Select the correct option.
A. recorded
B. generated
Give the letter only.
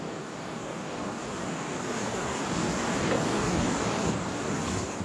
B